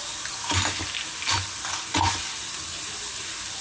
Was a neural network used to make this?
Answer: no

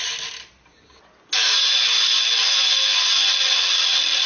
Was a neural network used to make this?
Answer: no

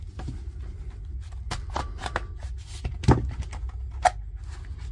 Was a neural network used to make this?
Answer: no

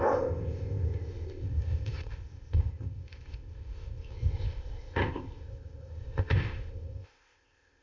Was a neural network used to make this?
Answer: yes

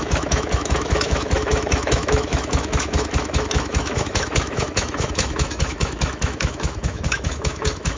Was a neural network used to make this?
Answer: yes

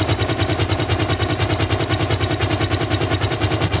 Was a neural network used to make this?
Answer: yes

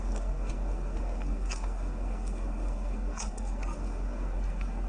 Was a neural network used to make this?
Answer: yes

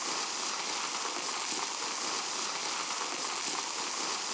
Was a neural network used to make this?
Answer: no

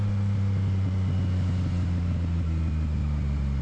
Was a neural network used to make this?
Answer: no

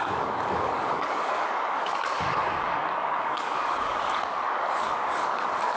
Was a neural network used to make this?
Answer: yes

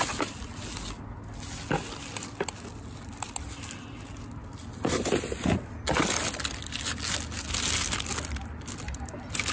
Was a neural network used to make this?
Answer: no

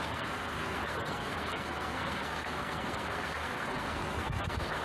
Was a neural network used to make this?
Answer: yes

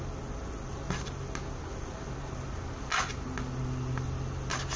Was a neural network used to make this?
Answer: no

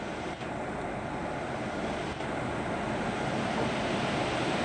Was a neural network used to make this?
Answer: no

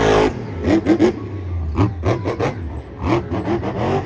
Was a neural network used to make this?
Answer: no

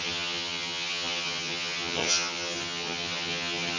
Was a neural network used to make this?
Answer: yes